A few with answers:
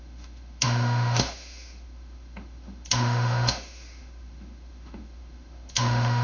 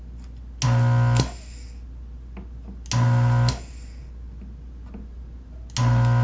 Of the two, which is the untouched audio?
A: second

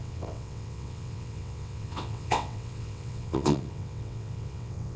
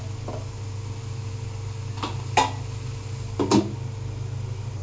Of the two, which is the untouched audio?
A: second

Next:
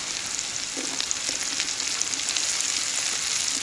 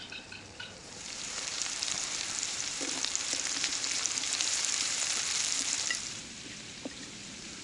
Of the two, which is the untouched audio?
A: first